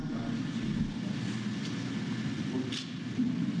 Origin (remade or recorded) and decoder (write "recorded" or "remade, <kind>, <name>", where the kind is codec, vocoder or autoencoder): recorded